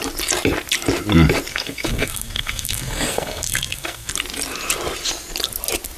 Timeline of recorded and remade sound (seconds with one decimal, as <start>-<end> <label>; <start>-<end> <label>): 0.0-1.5 recorded; 1.5-4.1 remade; 4.1-6.0 recorded